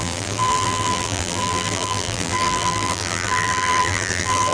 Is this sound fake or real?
fake